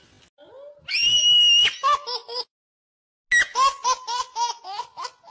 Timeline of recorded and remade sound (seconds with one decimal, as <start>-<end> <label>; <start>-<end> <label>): 0.0-5.3 recorded